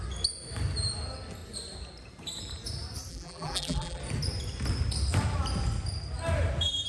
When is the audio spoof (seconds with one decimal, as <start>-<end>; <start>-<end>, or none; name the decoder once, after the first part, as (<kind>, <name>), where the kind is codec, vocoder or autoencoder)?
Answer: 3.1-4.0 (vocoder, BigVGAN v2)